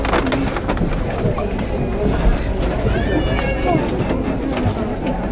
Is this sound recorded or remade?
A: recorded